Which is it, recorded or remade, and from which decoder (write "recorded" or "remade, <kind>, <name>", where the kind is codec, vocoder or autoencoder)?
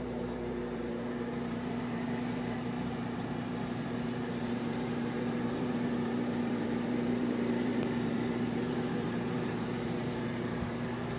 remade, vocoder, BigVGAN v2